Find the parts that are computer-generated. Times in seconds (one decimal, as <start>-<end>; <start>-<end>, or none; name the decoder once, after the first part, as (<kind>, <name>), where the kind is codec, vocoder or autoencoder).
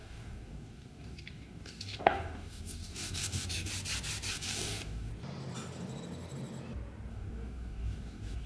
0.0-3.7 (codec, DAC); 4.3-5.1; 7.1-8.5